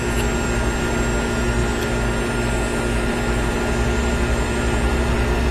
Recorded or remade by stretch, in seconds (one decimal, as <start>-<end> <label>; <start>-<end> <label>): 0.0-5.5 recorded